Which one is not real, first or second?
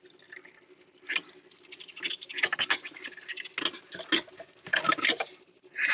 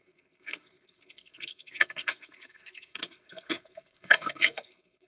second